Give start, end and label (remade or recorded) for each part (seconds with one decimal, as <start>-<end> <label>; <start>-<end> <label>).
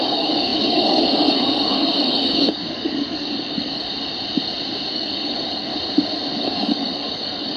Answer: 0.0-3.8 remade; 3.8-4.9 recorded; 4.9-5.7 remade; 5.7-6.4 recorded; 6.4-7.6 remade